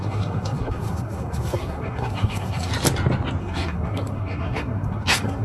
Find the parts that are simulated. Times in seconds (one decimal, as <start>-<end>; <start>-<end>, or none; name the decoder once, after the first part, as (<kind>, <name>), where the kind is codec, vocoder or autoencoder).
0.0-2.7 (codec, SNAC); 3.4-5.4